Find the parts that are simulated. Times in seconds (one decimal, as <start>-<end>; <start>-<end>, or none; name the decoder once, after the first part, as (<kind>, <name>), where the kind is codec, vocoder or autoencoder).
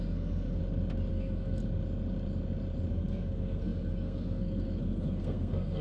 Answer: 0.0-0.6 (codec, SNAC); 1.1-1.6; 2.9-5.8